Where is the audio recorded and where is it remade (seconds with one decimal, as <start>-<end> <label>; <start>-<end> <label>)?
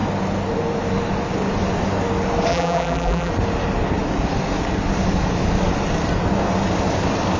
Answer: 0.0-2.5 recorded; 2.5-3.3 remade; 3.3-7.4 recorded